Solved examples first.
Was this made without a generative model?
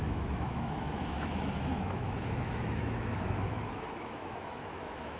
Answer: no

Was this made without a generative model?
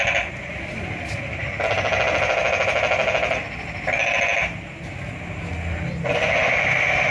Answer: yes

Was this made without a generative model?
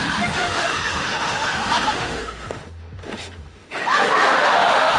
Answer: no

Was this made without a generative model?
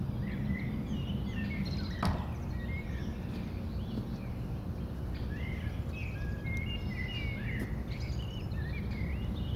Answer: yes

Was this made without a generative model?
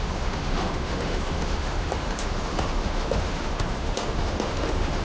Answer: no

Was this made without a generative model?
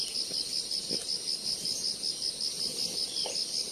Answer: yes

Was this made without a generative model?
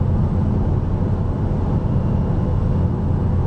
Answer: yes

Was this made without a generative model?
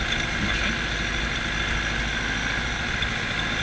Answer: yes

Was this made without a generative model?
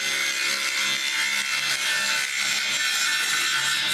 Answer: yes